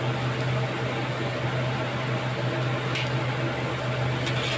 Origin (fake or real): real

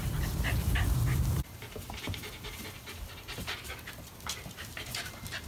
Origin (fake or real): real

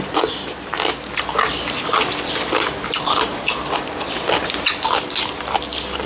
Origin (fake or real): real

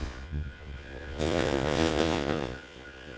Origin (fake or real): fake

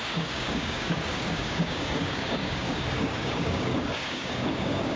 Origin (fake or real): fake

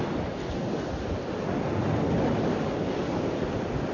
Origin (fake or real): real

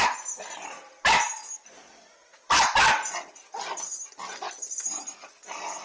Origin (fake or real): real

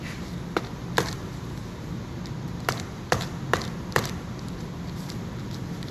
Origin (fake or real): fake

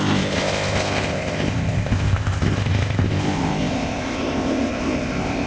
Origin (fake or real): fake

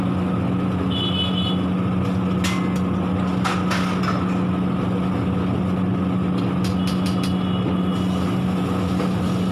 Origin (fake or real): real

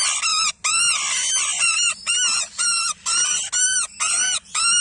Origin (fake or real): real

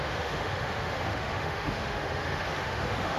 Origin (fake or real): fake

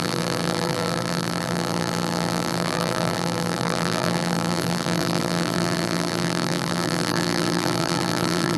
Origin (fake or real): fake